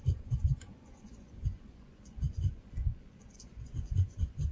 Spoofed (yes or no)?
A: yes